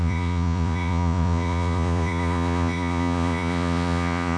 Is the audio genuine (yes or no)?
no